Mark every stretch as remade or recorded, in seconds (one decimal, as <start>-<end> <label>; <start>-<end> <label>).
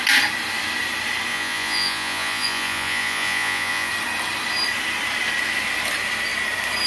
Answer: 0.0-1.3 recorded; 1.3-3.9 remade; 3.9-6.9 recorded